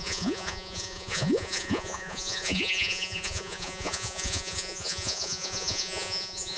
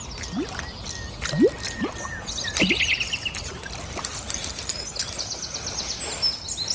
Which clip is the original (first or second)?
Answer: second